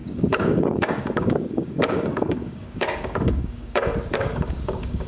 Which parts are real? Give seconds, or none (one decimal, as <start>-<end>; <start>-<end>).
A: none